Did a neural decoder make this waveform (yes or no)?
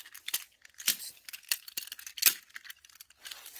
no